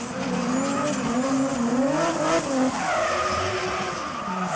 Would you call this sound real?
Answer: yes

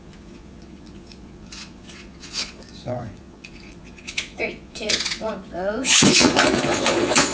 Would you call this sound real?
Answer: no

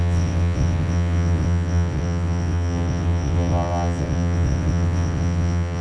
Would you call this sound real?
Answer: no